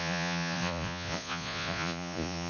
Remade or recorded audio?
remade